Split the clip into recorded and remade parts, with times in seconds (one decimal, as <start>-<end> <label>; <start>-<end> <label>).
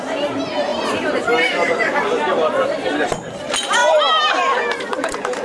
0.0-5.4 remade